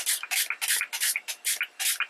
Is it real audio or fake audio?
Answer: real